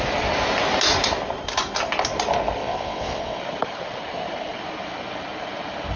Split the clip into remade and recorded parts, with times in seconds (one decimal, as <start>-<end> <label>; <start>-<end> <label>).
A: 0.0-2.6 recorded; 2.6-3.4 remade; 3.4-6.0 recorded